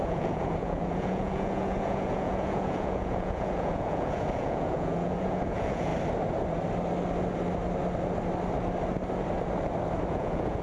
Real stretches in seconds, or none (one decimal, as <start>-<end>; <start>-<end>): 5.9-10.1

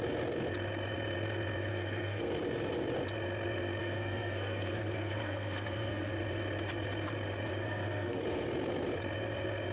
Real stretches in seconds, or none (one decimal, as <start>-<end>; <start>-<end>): 0.0-1.7; 2.3-3.8; 6.1-7.6; 8.2-9.7

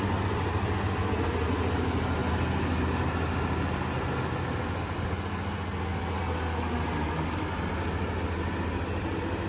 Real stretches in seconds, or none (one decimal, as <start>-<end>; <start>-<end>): 0.0-9.5

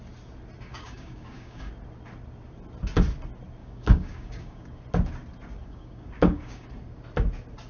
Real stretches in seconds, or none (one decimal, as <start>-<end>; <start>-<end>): 0.0-0.7; 1.7-3.6; 4.8-5.6; 6.7-7.7

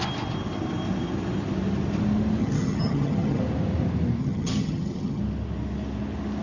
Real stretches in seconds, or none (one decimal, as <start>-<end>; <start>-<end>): 0.0-2.4; 3.4-4.2; 5.2-6.4

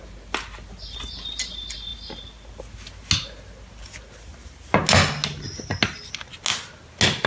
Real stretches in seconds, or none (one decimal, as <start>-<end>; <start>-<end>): 0.0-7.3